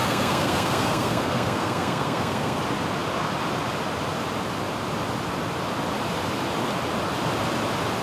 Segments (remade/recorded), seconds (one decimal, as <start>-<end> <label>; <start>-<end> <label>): 0.0-2.6 remade; 2.6-8.0 recorded